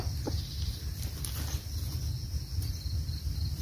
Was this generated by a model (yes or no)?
no